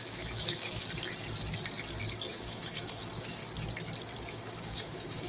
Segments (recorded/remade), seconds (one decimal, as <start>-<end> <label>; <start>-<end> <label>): 0.0-0.8 remade; 0.8-2.3 recorded; 2.3-3.4 remade; 3.4-4.3 recorded; 4.3-5.3 remade